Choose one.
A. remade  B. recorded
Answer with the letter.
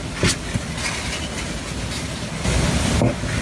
B